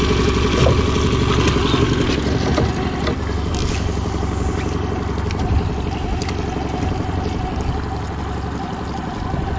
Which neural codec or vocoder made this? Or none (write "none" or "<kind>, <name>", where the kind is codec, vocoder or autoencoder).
none